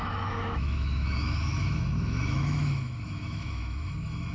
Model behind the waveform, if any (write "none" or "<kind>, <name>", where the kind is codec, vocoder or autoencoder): autoencoder, DAC-VAE